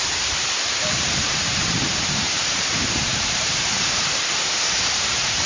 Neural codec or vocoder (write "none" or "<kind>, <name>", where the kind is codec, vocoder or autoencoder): vocoder, BigVGAN v2